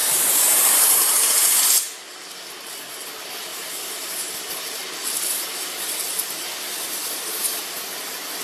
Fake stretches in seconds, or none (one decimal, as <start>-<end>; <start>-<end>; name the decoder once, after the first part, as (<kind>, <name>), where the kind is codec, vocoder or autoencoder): 0.0-1.6 (vocoder, BigVGAN v2); 3.5-4.4; 7.0-7.6